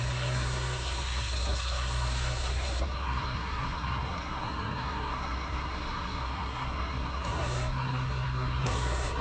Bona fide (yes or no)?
no